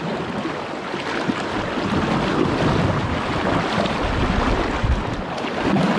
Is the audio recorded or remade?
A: recorded